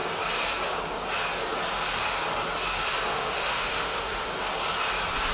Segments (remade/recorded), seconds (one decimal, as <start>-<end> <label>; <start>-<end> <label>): 0.0-3.1 recorded; 3.1-4.3 remade; 4.3-5.3 recorded